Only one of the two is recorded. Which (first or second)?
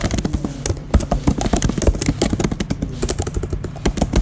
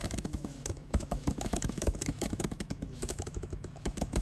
first